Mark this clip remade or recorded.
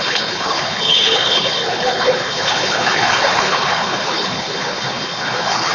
remade